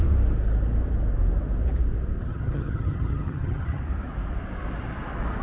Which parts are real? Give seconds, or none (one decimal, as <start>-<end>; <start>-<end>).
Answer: 0.0-2.2; 3.8-5.4

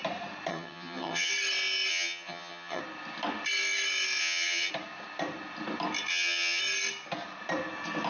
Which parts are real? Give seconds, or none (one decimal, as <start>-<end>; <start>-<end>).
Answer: 0.0-0.5; 1.3-1.9; 2.8-4.2; 4.7-6.1; 6.6-8.1

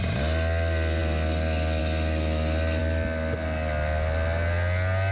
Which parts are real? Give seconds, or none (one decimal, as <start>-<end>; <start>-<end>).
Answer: 0.0-5.1

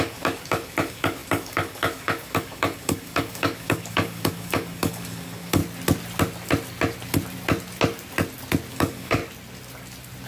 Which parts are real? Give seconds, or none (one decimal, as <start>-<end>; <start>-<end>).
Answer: 5.6-8.7; 9.2-10.3

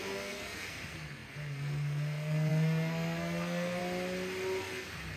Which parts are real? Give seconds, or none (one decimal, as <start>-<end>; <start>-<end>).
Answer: 3.8-4.6

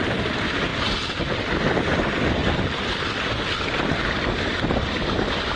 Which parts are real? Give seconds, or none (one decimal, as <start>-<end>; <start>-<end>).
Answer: 0.0-5.6

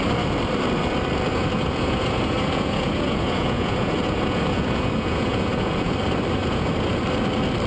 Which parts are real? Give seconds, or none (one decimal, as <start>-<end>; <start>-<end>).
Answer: 0.0-1.3; 5.9-6.4; 7.0-7.7